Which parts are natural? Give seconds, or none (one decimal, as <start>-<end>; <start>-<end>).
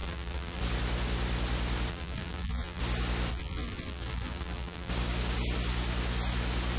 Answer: 0.6-1.9; 2.8-3.3; 4.9-6.8